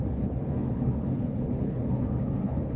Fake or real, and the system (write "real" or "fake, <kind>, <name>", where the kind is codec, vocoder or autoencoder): fake, codec, HILCodec